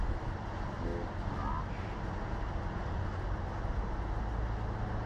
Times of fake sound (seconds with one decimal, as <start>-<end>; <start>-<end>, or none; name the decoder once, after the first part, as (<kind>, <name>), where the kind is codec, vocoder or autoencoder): none